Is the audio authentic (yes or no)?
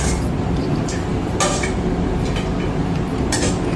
no